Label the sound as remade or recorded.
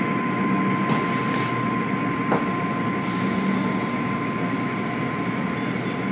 recorded